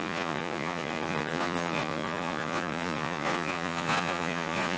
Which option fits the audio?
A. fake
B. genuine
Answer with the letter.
A